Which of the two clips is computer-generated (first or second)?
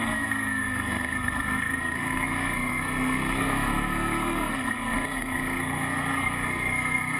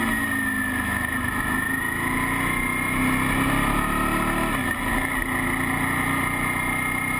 first